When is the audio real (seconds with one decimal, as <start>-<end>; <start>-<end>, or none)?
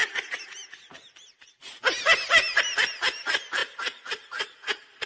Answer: 0.0-3.6